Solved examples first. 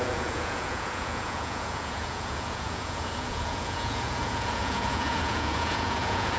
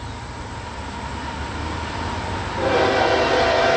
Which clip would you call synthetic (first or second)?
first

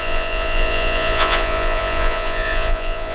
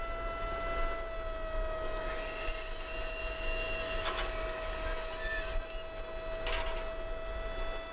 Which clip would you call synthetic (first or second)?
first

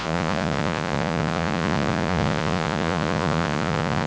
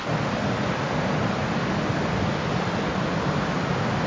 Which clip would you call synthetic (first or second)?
first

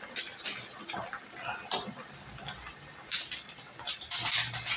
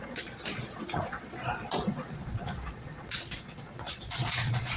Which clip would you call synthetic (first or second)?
second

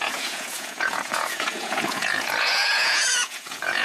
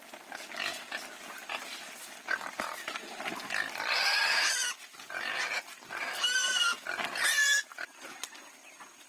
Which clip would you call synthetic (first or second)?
first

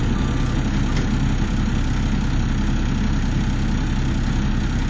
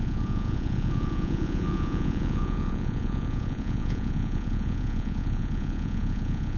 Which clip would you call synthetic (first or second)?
second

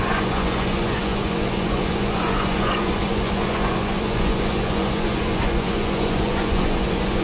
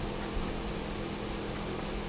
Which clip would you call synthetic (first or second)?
first